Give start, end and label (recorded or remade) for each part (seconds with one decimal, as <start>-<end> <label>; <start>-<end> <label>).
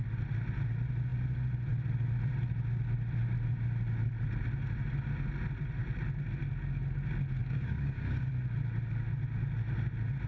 0.0-7.4 recorded; 7.4-8.3 remade; 8.3-10.3 recorded